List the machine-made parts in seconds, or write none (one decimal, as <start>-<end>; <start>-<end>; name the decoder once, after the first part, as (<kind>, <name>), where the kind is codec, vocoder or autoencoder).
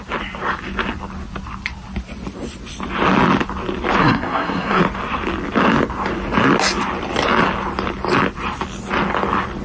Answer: 4.0-4.8 (codec, SNAC)